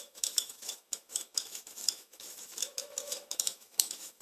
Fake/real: fake